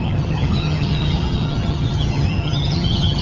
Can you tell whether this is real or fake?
fake